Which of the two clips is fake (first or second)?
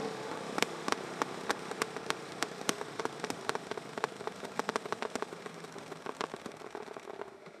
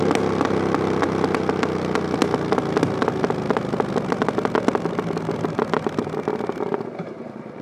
first